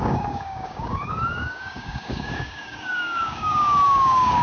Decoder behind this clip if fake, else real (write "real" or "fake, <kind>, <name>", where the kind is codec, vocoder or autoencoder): fake, codec, DAC